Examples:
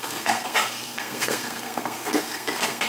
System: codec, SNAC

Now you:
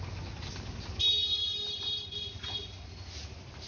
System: none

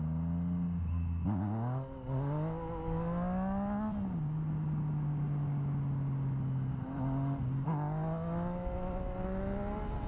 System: none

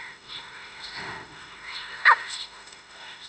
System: autoencoder, DAC-VAE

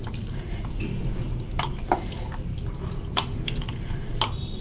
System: none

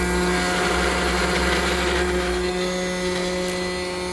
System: none